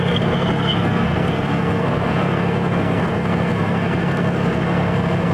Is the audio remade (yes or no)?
yes